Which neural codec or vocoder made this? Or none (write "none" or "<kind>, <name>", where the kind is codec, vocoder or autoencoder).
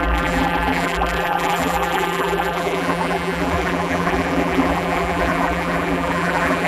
vocoder, BigVGAN v2